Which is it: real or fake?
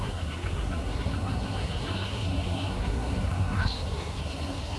fake